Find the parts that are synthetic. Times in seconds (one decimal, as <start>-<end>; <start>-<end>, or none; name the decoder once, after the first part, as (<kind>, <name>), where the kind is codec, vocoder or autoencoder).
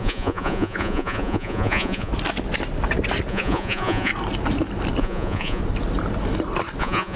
0.0-2.1 (vocoder, Vocos); 3.3-4.1; 5.0-5.6; 6.8-7.2